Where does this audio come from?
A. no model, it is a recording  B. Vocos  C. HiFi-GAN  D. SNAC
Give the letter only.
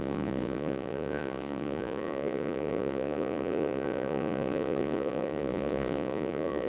B